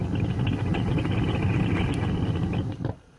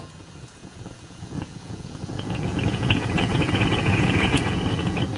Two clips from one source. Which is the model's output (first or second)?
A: second